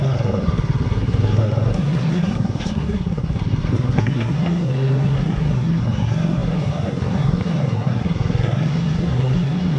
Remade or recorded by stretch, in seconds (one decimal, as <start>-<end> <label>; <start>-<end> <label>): 0.0-9.8 remade

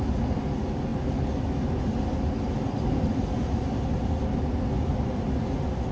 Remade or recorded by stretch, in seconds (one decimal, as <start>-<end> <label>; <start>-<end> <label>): 0.0-5.9 recorded

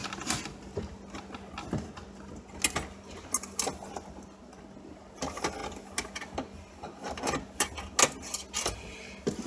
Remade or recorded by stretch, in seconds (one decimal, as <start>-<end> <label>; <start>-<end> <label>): 0.0-9.5 recorded

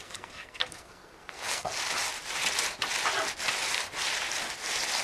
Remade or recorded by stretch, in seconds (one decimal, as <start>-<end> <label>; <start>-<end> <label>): 0.0-1.7 remade; 1.7-5.0 recorded

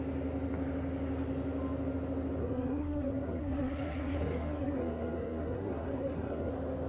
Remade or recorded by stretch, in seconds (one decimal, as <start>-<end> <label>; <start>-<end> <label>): 0.0-2.4 recorded; 2.4-6.5 remade; 6.5-6.9 recorded